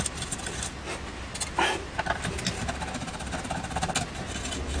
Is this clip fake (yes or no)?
no